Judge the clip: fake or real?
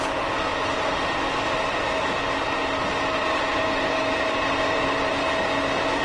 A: real